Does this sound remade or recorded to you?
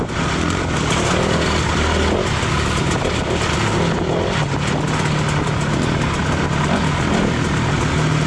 recorded